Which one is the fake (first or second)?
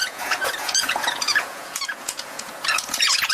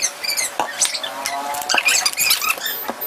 first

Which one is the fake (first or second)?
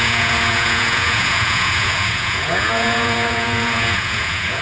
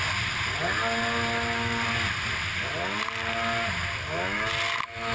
first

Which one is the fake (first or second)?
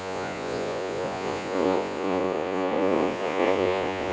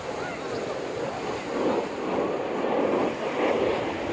first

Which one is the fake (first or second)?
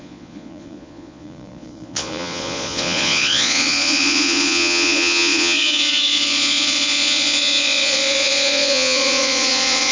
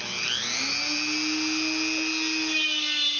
first